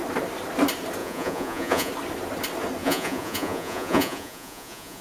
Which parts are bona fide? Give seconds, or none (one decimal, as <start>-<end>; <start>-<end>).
0.0-1.0; 1.9-2.8